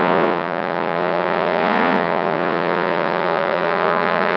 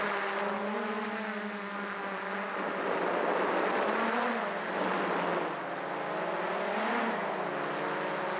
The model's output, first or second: first